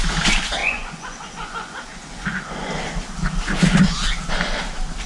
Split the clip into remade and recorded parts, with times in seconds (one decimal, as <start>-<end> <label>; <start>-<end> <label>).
0.0-0.6 recorded; 0.6-2.8 remade; 2.8-5.1 recorded

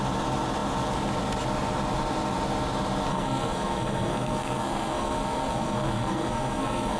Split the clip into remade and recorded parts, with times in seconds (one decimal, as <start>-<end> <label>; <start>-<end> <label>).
0.0-3.1 recorded; 3.1-7.0 remade

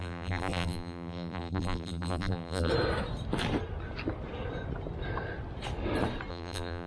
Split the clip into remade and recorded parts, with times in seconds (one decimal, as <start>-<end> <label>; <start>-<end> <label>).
0.0-2.7 remade; 2.7-6.3 recorded; 6.3-6.9 remade

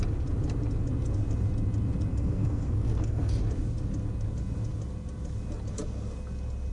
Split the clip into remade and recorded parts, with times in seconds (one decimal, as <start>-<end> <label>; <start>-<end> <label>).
0.0-2.1 recorded; 2.1-3.4 remade; 3.4-6.7 recorded